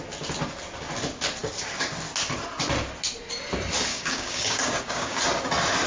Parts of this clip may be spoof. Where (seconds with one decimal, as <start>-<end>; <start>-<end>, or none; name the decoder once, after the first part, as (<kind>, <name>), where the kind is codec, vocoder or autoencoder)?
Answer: 3.9-5.2 (codec, DAC)